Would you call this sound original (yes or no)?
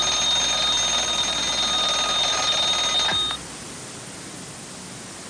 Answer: yes